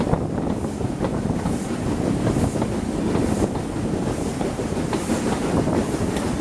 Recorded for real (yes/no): yes